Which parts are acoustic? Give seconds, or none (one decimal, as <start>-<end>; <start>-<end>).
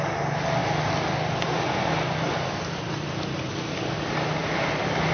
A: 0.0-0.6; 3.7-4.4